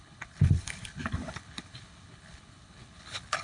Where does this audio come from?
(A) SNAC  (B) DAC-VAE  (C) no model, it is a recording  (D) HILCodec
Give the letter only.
D